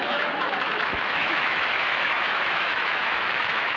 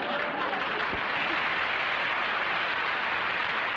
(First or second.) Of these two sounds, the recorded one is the second